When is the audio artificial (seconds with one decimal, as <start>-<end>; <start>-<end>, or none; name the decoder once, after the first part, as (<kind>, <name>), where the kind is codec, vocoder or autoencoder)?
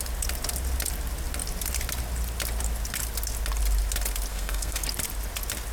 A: 4.3-4.8 (codec, SNAC)